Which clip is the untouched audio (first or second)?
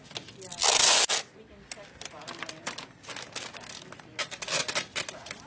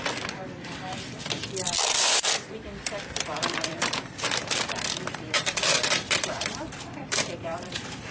first